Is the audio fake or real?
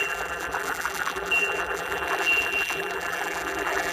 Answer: fake